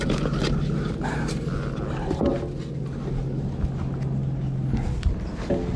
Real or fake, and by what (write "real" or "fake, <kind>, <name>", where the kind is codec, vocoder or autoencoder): real